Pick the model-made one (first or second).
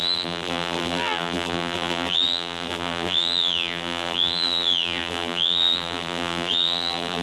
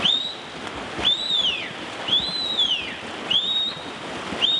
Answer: first